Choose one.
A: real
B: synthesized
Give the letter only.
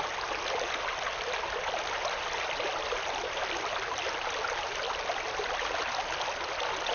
A